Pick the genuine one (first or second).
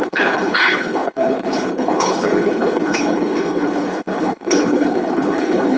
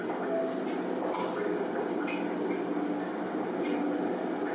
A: second